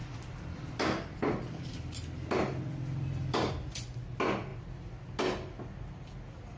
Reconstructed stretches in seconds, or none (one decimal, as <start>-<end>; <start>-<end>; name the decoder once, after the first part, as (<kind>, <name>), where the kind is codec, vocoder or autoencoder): 0.0-3.5 (vocoder, BigVGAN v2)